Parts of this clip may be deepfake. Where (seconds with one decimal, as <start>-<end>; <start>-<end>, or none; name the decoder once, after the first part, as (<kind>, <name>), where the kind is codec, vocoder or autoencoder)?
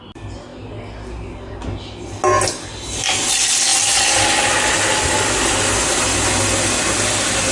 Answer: none